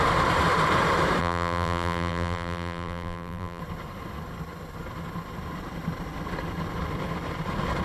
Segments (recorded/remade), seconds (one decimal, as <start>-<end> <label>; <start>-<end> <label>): 0.0-1.2 recorded; 1.2-3.6 remade; 3.6-7.8 recorded